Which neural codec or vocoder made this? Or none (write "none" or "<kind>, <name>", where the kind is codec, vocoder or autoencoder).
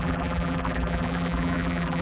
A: vocoder, BigVGAN v2